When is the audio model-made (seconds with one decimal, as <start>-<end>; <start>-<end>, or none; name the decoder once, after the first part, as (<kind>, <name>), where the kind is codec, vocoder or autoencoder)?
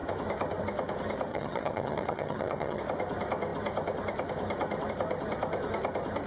1.3-2.8 (vocoder, HiFi-GAN)